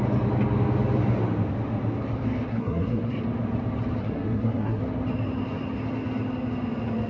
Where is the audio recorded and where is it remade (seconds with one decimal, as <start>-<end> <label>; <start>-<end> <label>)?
0.0-2.5 recorded; 2.5-3.2 remade; 3.2-4.0 recorded; 4.0-4.8 remade; 4.8-7.1 recorded